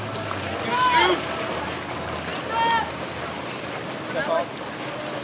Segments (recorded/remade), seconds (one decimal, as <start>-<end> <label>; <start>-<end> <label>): 0.0-5.2 recorded

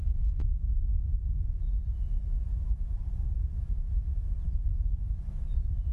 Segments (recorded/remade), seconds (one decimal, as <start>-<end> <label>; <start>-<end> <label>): 0.0-5.9 recorded

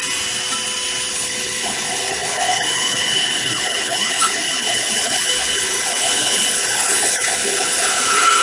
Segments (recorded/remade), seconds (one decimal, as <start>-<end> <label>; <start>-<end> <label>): 0.0-1.1 recorded; 1.1-8.4 remade

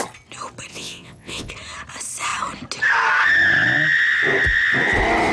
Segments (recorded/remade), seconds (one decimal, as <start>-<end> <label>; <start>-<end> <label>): 0.0-0.7 recorded; 0.7-1.5 remade; 1.5-5.3 recorded

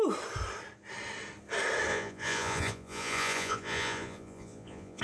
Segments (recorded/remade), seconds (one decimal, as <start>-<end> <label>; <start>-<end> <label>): 0.0-1.9 recorded; 1.9-5.0 remade

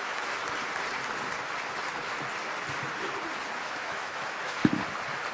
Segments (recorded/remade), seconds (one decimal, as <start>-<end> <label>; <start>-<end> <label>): 0.0-0.4 remade; 0.4-3.6 recorded; 3.6-4.6 remade; 4.6-5.3 recorded

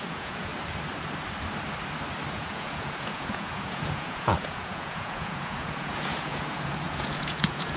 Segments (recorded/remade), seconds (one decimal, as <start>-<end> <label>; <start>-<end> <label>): 0.0-0.5 remade; 0.5-2.3 recorded; 2.3-7.8 remade

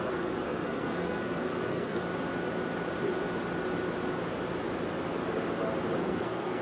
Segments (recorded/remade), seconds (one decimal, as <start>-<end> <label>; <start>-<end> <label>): 0.0-2.0 remade; 2.0-6.0 recorded; 6.0-6.6 remade